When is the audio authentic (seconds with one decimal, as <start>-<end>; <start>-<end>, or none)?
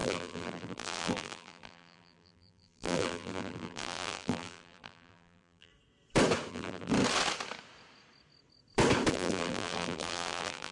5.7-6.5; 6.9-9.1